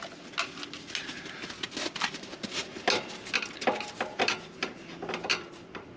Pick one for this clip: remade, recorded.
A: recorded